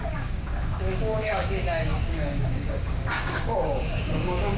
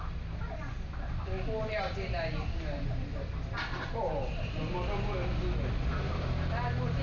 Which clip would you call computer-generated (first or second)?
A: first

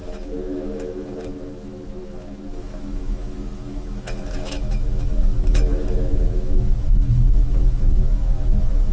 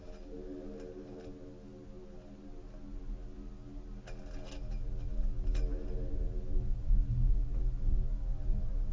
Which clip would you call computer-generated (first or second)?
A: first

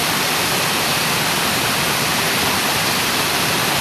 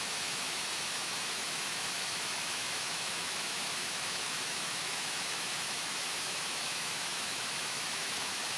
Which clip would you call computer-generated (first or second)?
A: second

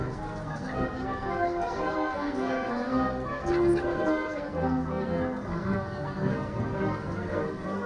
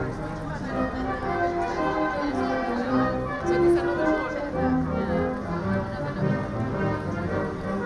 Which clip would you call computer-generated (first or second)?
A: first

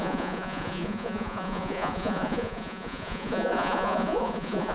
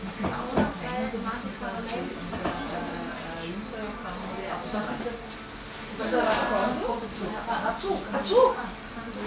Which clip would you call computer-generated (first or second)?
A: first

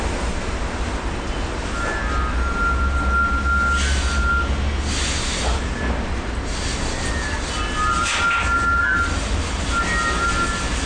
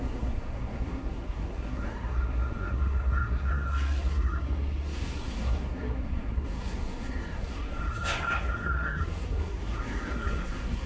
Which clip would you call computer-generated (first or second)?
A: second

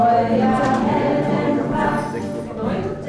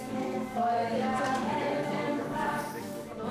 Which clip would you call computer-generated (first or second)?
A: second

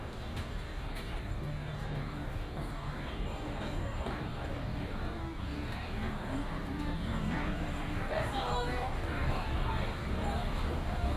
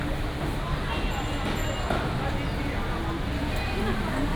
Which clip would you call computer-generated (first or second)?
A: first